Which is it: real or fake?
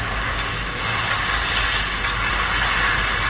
real